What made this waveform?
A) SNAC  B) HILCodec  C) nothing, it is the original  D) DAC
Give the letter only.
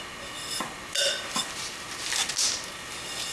C